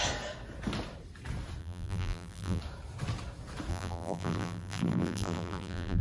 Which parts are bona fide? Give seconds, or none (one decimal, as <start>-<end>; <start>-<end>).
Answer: 0.0-1.6; 2.6-3.7